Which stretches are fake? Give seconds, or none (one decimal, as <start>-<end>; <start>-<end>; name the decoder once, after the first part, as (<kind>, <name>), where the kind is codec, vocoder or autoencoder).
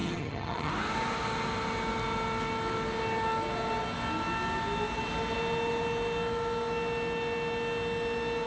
0.0-0.7 (vocoder, HiFi-GAN)